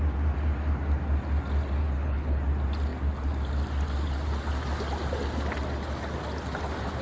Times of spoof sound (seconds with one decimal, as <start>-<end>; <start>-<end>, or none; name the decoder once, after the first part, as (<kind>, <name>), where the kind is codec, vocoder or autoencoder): 1.8-2.4 (codec, HILCodec)